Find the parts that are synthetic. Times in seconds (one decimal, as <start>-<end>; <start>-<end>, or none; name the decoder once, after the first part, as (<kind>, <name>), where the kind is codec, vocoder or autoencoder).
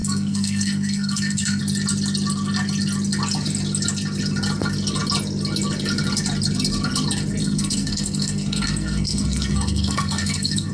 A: 0.0-1.6 (codec, SNAC); 7.4-10.7